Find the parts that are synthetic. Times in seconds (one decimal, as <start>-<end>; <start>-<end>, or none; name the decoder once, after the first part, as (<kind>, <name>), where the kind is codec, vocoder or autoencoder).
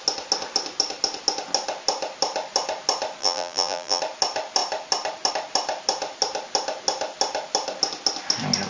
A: 3.2-4.0 (vocoder, BigVGAN v2)